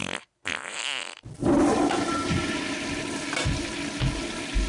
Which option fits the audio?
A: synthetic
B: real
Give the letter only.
B